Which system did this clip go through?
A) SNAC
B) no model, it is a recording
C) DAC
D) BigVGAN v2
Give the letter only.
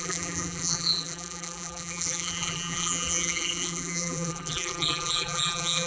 D